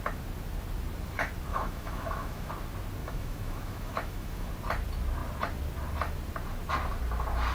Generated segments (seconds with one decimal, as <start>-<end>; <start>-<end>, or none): 1.5-2.5; 3.0-4.5

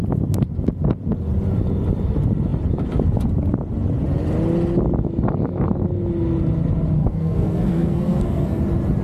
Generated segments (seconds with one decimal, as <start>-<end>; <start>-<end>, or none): 7.0-8.6

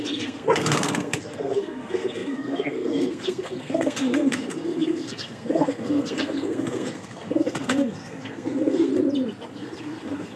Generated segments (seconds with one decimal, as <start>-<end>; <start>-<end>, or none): 0.0-8.9; 9.5-10.4

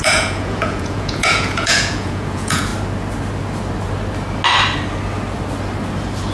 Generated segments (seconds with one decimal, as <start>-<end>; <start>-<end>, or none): 0.0-2.7

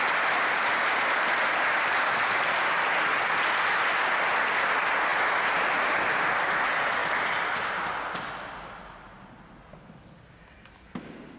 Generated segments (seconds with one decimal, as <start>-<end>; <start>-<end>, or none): none